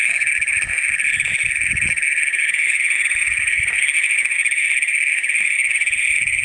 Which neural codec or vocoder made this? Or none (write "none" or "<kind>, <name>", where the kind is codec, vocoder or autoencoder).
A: autoencoder, DAC-VAE